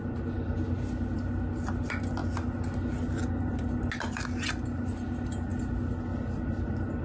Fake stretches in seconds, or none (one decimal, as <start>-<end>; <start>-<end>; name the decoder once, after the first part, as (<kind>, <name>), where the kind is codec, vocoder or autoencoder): none